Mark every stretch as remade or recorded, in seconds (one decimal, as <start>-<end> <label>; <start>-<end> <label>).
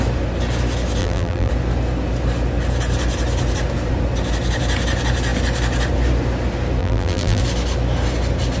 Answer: 0.0-1.0 recorded; 1.0-1.5 remade; 1.5-6.8 recorded; 6.8-7.4 remade; 7.4-8.6 recorded